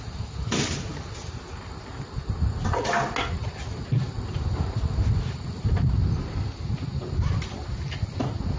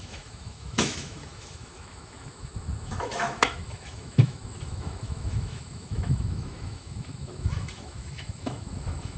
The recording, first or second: first